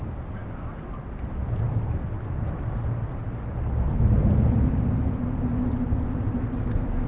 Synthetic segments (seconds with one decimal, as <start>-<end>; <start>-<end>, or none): none